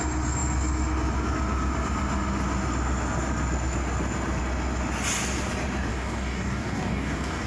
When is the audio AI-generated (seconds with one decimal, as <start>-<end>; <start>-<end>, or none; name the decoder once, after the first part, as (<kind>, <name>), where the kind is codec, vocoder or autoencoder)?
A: 5.9-7.5 (codec, DAC)